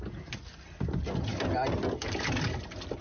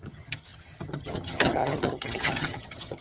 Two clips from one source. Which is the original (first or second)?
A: first